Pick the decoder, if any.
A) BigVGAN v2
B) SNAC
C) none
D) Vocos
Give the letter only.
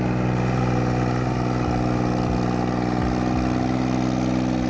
C